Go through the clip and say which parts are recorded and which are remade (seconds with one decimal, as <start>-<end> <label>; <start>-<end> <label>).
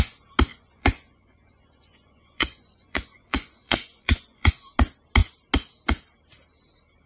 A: 0.0-0.5 recorded; 0.5-4.5 remade; 4.5-7.1 recorded